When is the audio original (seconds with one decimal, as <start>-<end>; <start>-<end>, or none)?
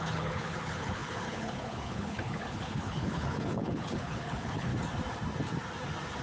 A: 4.7-6.2